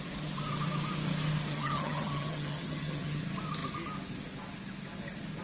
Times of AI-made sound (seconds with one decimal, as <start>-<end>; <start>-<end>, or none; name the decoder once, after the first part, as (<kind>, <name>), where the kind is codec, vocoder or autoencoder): 1.5-3.2 (vocoder, HiFi-GAN)